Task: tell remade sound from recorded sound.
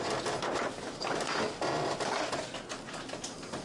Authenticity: recorded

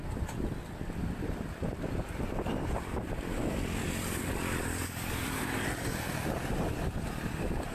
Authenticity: remade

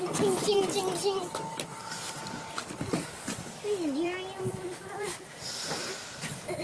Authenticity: remade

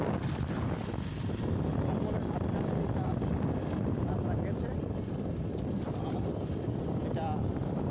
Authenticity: recorded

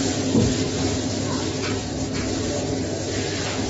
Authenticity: recorded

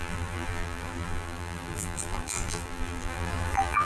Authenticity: remade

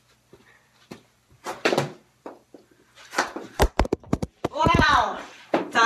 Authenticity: remade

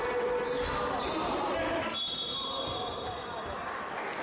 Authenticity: recorded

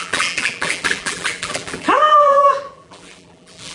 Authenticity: remade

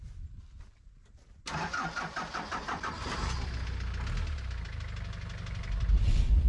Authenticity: recorded